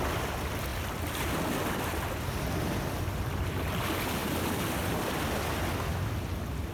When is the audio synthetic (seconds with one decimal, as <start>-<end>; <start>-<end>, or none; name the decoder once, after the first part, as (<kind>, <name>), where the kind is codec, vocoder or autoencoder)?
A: 0.7-3.7 (vocoder, BigVGAN v2); 4.2-5.3